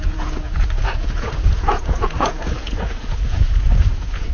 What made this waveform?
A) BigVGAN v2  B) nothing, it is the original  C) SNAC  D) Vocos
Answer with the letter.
D